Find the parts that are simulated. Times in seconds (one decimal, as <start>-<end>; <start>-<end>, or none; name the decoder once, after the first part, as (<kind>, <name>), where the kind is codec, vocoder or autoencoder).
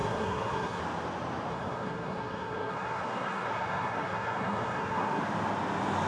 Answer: 0.0-0.8 (codec, SNAC); 1.5-5.2